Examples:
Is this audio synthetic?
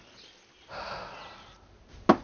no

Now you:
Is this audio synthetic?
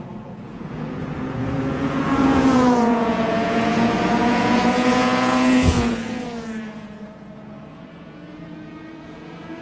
yes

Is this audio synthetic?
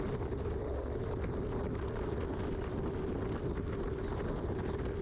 no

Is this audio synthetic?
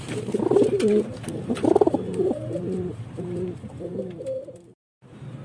yes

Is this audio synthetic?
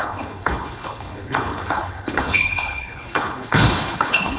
yes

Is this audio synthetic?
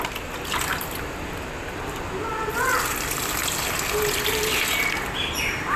no